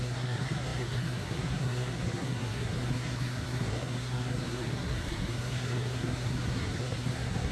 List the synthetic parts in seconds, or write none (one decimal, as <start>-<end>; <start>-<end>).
0.0-7.5